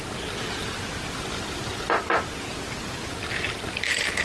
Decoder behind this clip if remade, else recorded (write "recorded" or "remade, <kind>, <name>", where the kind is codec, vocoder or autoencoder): recorded